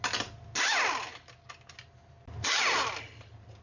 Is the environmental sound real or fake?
real